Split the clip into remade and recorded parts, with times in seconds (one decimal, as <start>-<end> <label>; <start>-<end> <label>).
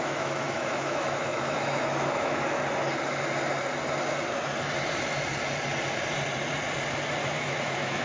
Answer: 0.0-2.6 remade; 2.6-7.2 recorded; 7.2-8.0 remade